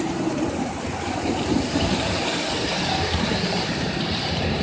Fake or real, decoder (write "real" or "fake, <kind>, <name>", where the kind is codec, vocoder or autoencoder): fake, vocoder, BigVGAN v2